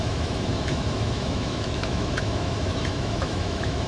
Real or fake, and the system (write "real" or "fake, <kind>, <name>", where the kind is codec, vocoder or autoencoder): fake, autoencoder, DAC-VAE